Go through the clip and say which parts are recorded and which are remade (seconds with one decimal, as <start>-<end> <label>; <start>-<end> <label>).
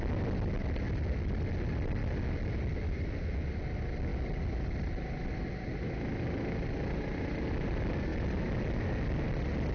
0.0-9.7 recorded